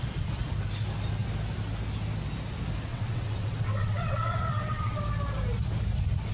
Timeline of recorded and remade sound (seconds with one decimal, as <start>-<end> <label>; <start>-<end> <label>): 0.0-2.9 recorded; 2.9-5.0 remade; 5.0-6.3 recorded